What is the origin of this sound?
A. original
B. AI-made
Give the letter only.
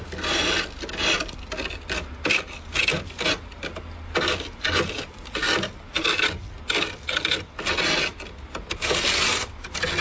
A